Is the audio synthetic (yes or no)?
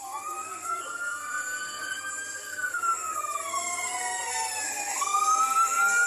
yes